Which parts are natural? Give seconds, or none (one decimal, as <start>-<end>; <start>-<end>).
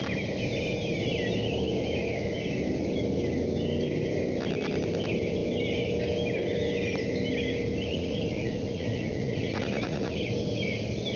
0.0-7.9; 10.2-11.2